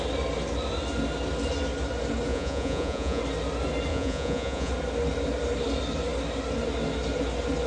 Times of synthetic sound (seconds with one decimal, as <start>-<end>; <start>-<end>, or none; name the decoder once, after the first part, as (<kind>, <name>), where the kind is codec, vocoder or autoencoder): 2.3-3.2 (vocoder, Vocos); 3.9-4.7